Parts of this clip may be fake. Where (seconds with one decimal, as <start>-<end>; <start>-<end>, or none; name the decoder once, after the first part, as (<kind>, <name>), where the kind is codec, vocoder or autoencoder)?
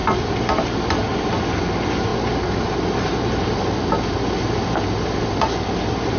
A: none